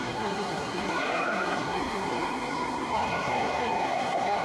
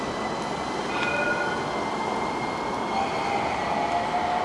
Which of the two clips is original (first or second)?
second